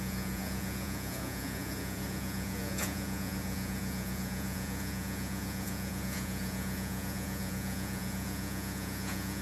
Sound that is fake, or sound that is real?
fake